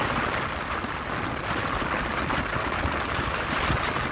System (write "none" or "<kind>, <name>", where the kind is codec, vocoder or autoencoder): none